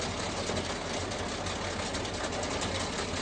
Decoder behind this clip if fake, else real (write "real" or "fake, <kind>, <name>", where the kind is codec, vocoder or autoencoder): real